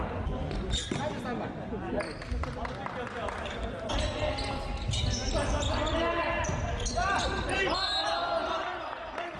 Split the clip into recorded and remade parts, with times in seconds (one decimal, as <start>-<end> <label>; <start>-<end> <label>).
0.0-9.4 recorded